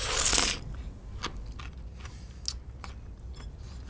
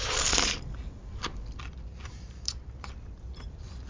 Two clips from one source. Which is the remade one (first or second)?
second